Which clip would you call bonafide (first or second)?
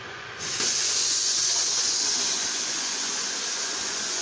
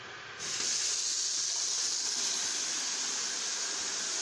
second